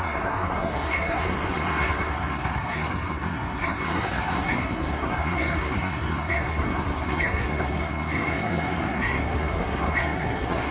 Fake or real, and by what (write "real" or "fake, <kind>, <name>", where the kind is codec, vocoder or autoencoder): fake, codec, SNAC